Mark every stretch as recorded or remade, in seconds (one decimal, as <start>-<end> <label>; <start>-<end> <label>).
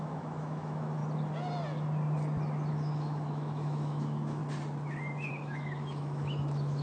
0.0-1.0 remade; 1.0-2.7 recorded; 2.7-4.4 remade; 4.4-5.3 recorded; 5.3-6.8 remade